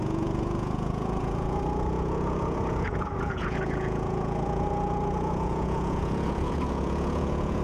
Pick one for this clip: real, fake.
fake